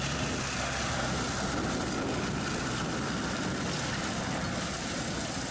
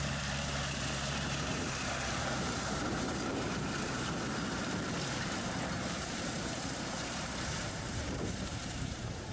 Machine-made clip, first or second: second